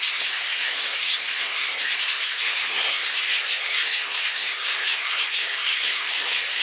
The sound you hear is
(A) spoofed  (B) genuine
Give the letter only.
A